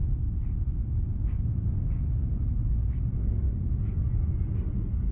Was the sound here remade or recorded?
recorded